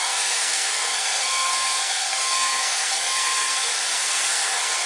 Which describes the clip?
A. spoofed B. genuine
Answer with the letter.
A